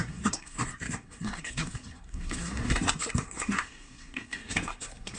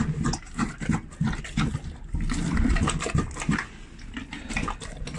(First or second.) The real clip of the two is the second